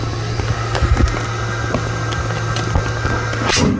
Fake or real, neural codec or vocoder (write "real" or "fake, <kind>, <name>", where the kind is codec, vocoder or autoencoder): real